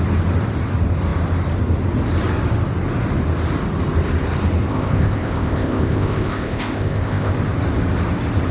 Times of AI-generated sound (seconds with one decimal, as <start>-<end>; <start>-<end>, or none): 4.7-7.3